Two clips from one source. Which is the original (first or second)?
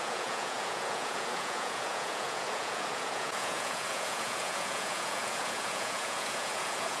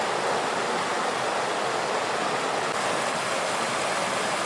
second